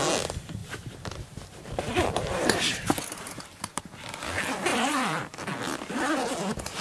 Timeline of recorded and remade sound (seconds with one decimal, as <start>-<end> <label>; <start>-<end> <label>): 0.0-0.6 recorded; 0.6-3.8 remade; 3.8-4.7 recorded; 4.7-5.3 remade; 5.3-6.8 recorded